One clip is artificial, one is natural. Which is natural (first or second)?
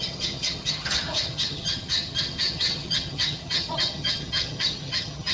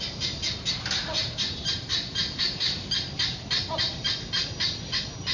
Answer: second